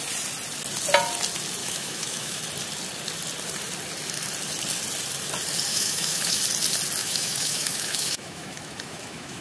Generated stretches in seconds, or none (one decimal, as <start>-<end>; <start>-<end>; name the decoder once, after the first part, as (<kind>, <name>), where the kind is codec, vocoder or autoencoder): 1.6-2.4 (autoencoder, DAC-VAE); 5.7-6.4; 7.0-9.4